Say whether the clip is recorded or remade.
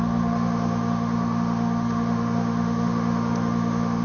remade